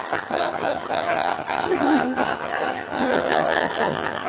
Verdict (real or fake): fake